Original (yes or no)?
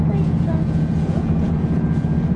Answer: no